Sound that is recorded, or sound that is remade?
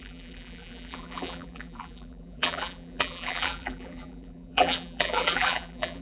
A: remade